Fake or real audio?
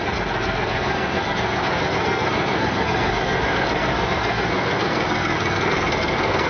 fake